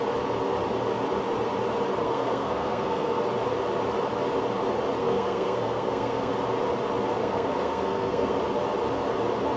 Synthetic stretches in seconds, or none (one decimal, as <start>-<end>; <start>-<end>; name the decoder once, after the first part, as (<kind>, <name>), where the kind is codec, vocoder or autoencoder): 2.0-3.2 (codec, SNAC); 5.0-6.3; 7.2-8.4

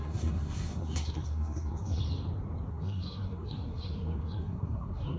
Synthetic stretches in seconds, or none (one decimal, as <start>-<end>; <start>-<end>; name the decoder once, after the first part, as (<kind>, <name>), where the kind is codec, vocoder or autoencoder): 0.0-2.0 (codec, SNAC); 2.7-5.2

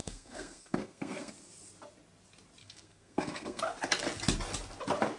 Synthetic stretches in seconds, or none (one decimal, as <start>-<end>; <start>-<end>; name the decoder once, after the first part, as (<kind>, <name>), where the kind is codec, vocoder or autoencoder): 0.0-1.3 (codec, SNAC); 2.6-3.6

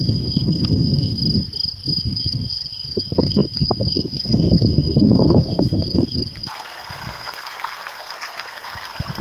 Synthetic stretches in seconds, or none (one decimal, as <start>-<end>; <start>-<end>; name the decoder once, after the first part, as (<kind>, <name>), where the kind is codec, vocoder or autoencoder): 0.0-1.2 (codec, SNAC); 2.0-9.2

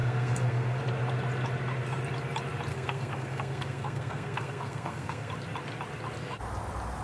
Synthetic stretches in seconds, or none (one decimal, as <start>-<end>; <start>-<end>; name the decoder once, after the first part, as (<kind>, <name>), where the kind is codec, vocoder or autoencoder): 0.0-0.8 (codec, SNAC); 2.7-5.3

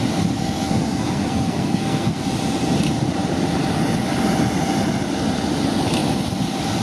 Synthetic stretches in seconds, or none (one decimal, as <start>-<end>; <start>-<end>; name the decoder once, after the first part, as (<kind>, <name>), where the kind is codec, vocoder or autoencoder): 0.4-2.2 (codec, SNAC)

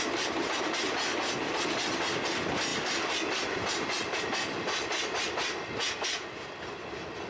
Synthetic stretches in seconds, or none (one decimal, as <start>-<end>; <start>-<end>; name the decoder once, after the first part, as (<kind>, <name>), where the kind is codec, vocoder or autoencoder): none

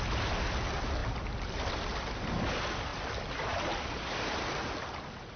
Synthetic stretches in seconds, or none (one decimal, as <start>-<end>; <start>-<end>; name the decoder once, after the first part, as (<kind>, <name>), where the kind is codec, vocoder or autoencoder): none